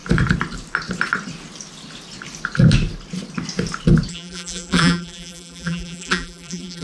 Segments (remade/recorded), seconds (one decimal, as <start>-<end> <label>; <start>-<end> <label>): 0.0-4.1 recorded; 4.1-6.8 remade